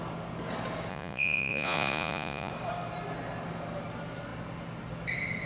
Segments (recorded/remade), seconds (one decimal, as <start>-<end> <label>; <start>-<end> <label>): 0.0-0.9 recorded; 0.9-2.5 remade; 2.5-5.5 recorded